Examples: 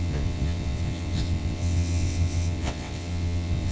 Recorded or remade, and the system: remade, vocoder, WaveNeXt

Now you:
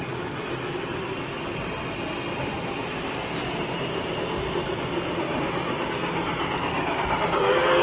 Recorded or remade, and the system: recorded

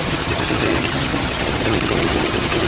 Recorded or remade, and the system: remade, vocoder, HiFi-GAN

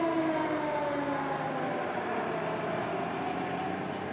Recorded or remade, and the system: recorded